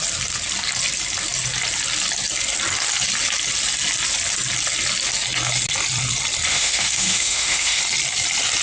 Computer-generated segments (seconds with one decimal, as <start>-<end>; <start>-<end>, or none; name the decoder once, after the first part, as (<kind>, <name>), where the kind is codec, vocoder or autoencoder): 6.5-7.8 (autoencoder, DAC-VAE)